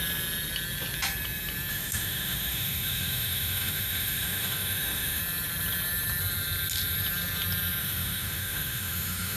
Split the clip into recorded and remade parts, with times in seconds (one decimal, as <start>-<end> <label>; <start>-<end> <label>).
0.0-1.7 recorded; 1.7-5.2 remade; 5.2-7.8 recorded; 7.8-9.4 remade